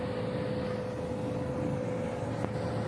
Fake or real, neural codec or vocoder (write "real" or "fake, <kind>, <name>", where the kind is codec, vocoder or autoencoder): real